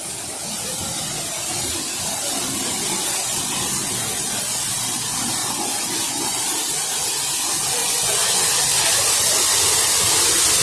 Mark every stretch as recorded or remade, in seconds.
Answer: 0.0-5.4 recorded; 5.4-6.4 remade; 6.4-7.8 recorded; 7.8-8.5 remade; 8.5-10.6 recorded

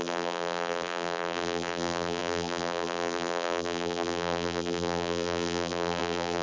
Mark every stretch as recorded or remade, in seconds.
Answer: 0.0-6.4 remade

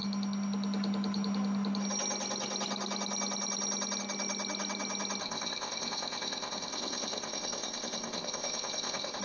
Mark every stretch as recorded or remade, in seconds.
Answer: 0.0-5.2 recorded; 5.2-9.2 remade

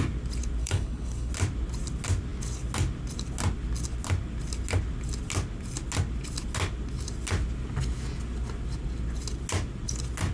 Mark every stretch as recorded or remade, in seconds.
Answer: 0.0-0.6 recorded; 0.6-1.3 remade; 1.3-10.3 recorded